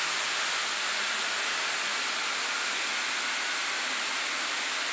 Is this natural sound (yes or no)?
yes